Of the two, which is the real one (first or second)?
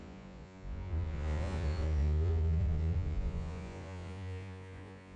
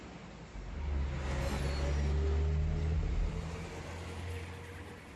second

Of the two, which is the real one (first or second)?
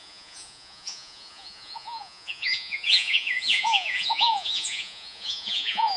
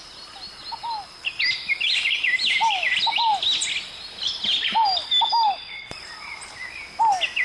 second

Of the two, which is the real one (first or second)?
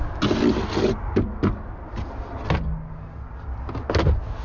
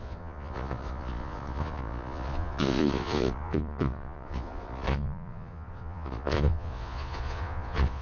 first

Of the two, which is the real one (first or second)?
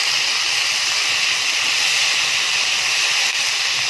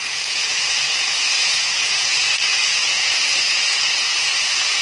first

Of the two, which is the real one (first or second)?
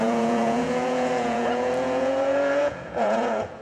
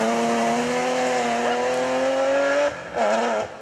second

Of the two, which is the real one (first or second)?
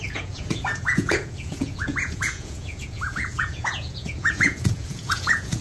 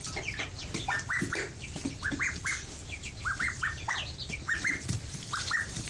second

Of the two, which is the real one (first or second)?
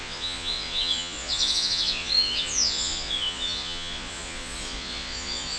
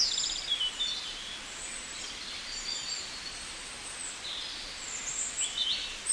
second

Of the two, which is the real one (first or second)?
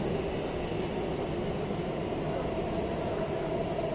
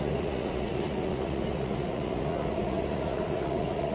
first